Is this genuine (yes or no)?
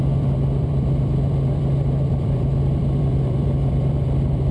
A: no